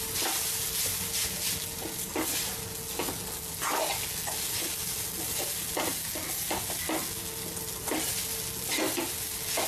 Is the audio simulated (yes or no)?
no